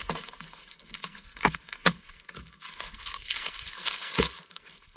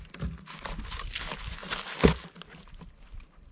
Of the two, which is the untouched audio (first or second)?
second